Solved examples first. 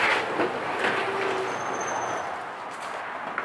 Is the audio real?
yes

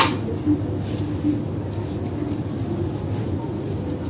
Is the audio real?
yes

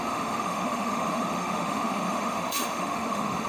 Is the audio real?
no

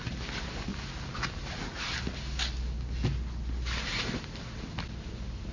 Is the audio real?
yes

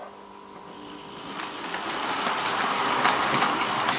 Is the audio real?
yes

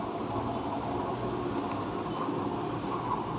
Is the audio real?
yes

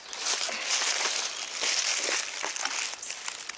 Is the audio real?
yes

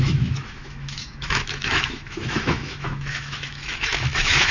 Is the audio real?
no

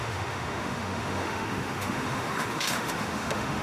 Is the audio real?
no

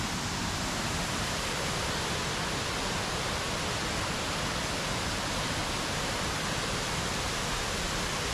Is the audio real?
yes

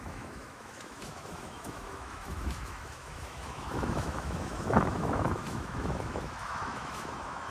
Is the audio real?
no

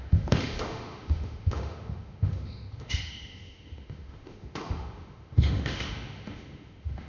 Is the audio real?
no